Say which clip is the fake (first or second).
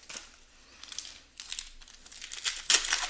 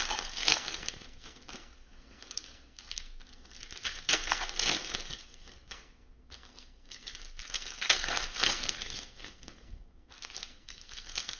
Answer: second